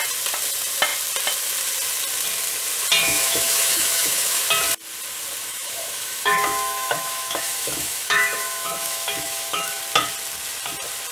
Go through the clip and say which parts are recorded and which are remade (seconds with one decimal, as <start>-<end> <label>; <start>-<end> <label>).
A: 0.0-3.0 recorded; 3.0-4.4 remade; 4.4-5.4 recorded; 5.4-9.8 remade; 9.8-11.1 recorded